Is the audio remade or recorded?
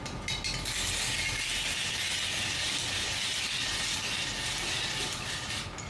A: recorded